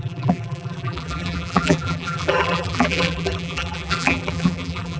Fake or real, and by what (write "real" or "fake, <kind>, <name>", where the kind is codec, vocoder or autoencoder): fake, vocoder, BigVGAN v2